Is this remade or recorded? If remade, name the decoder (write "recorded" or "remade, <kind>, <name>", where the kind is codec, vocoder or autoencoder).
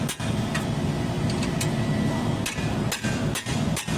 recorded